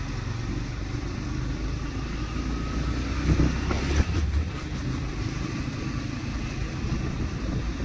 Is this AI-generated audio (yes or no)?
no